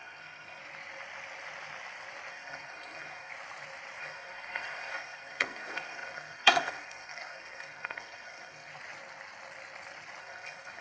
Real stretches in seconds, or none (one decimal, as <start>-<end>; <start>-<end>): 0.6-2.3; 3.3-4.0; 8.7-10.2